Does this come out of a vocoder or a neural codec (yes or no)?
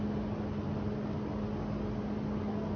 no